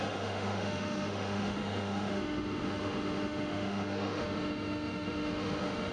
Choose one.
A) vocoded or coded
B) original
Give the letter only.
A